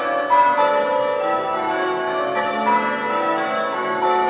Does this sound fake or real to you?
real